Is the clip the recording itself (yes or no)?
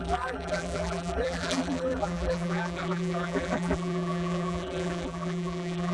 no